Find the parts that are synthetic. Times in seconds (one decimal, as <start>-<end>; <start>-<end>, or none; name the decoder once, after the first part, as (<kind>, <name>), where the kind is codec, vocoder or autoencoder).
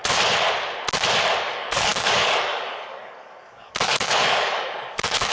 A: 1.5-5.3 (codec, DAC)